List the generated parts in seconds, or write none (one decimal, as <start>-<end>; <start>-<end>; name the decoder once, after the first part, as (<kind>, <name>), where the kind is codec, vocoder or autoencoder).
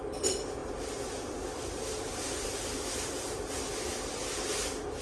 0.6-3.6 (vocoder, BigVGAN v2)